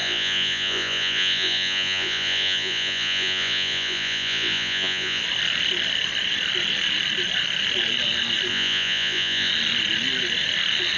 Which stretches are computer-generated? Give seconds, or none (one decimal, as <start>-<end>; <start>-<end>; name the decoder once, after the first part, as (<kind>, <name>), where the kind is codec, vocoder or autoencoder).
0.0-5.2 (vocoder, Vocos); 8.5-9.5